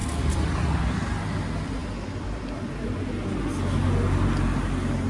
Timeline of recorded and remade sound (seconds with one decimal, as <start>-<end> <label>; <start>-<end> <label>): 0.0-0.8 remade; 0.8-1.8 recorded; 1.8-2.4 remade; 2.4-5.1 recorded